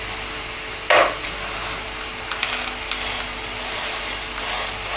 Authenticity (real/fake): real